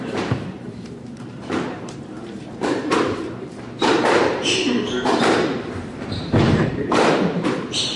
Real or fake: fake